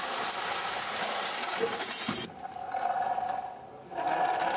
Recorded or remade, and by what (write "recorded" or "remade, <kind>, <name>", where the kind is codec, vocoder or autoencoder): recorded